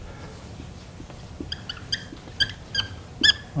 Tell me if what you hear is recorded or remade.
recorded